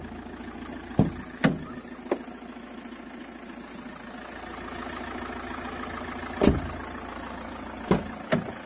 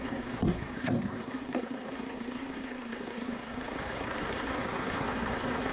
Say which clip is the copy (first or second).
second